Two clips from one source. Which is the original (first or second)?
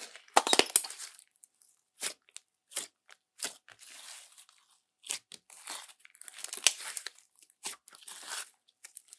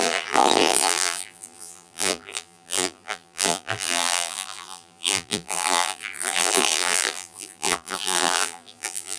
first